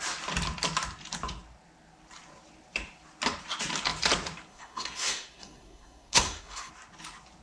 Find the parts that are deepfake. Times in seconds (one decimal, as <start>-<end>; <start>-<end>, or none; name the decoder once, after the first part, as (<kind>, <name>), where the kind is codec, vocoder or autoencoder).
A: 4.5-6.7 (codec, SNAC)